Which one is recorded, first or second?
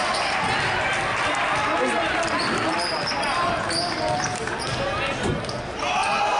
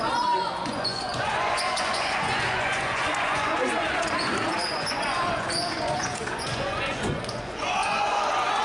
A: first